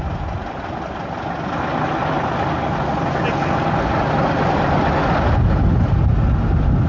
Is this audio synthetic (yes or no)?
no